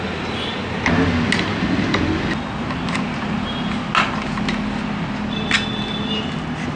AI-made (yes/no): no